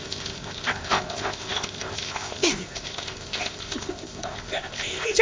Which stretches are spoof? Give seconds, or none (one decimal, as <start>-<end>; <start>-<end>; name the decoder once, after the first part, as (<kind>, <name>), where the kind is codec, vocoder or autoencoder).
0.0-5.2 (codec, ZipCodec)

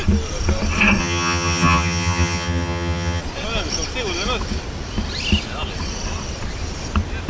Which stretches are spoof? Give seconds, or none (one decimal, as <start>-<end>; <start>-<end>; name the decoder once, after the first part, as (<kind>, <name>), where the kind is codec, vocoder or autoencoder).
1.0-3.2 (vocoder, HiFi-GAN)

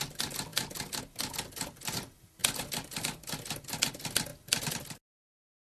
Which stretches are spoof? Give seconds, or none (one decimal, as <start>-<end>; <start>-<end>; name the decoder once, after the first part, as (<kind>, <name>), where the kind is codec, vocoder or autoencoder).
none

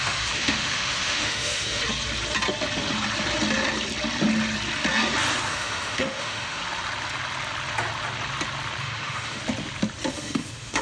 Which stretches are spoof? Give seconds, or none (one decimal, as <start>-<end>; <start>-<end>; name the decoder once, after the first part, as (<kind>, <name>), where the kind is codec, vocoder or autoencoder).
0.0-1.8 (autoencoder, DAC-VAE); 5.5-6.6; 8.8-9.4; 10.1-10.8

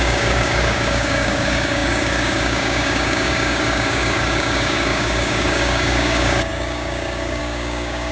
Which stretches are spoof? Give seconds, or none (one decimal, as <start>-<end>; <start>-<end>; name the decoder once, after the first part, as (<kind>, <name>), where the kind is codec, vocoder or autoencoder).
0.0-8.1 (codec, DAC)

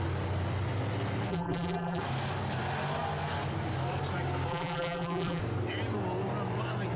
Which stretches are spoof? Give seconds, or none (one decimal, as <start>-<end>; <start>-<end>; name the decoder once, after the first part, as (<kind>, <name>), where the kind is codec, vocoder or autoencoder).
1.3-2.0 (vocoder, BigVGAN v2); 4.5-5.4